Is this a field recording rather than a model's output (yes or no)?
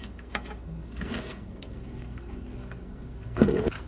no